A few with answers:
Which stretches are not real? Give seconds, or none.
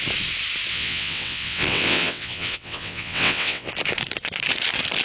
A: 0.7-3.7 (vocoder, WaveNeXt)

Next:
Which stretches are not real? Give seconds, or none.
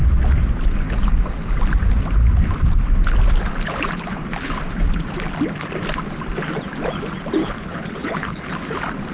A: 7.4-8.5 (codec, HILCodec)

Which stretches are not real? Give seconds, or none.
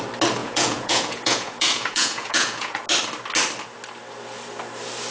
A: 0.4-2.8 (vocoder, Vocos)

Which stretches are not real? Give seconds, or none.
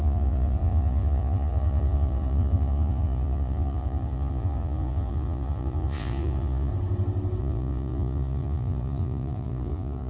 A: 0.0-6.7 (vocoder, Vocos); 7.4-10.1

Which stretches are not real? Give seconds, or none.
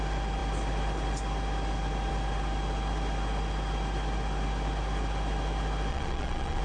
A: 5.9-6.6 (vocoder, Vocos)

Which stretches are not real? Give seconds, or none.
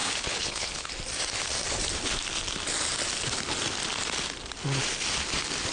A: 0.0-0.9 (codec, HILCodec)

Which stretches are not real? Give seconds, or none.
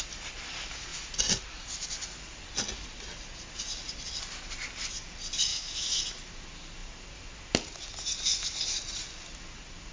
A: 5.5-6.0 (autoencoder, DAC-VAE)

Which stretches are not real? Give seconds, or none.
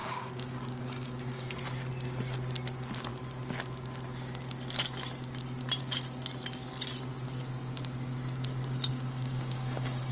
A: 0.0-1.6 (codec, DAC); 8.9-10.1